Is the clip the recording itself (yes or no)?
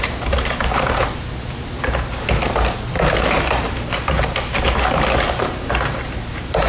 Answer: no